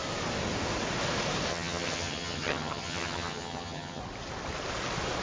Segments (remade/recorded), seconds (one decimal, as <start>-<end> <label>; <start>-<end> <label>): 0.0-1.5 recorded; 1.5-4.0 remade; 4.0-5.2 recorded